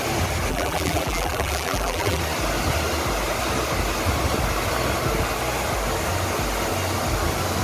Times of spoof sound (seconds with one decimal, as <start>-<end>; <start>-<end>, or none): 0.5-2.2